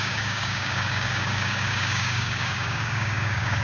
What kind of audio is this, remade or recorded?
remade